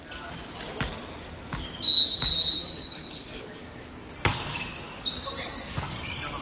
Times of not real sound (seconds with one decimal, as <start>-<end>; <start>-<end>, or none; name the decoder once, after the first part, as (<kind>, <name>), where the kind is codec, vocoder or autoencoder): 2.6-6.4 (codec, DAC)